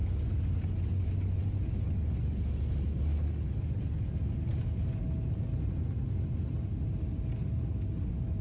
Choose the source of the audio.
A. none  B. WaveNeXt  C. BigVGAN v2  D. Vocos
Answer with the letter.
A